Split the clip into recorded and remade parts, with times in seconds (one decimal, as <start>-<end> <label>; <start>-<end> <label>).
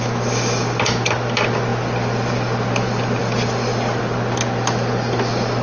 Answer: 0.0-5.6 recorded